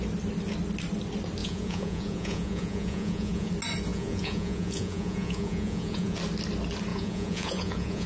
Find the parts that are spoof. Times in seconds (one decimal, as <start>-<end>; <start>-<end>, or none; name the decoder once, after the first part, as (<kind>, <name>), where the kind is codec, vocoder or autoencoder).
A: 1.4-3.5 (vocoder, Vocos); 3.9-6.2; 6.9-8.1